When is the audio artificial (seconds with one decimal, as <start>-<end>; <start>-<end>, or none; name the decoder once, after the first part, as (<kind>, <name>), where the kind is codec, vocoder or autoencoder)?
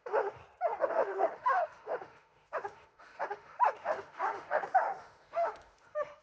0.0-0.4 (autoencoder, DAC-VAE); 0.9-6.2